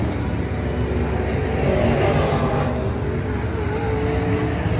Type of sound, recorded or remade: recorded